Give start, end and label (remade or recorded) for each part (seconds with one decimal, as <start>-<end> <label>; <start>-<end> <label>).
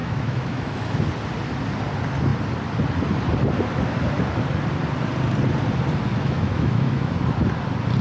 0.0-1.0 remade; 1.0-6.1 recorded; 6.1-7.1 remade; 7.1-8.0 recorded